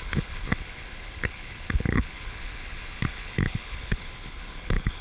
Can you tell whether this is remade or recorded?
remade